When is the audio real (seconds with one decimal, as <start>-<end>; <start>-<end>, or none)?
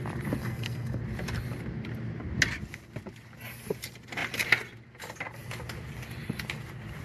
0.0-0.4; 1.0-7.0